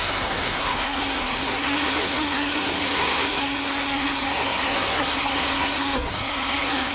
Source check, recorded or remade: remade